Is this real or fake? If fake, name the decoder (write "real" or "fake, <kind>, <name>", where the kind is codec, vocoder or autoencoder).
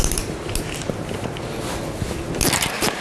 real